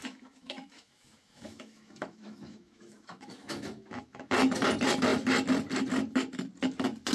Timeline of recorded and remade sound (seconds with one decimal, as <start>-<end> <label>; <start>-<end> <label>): 0.0-4.3 remade; 4.3-7.1 recorded